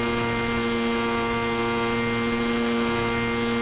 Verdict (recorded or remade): recorded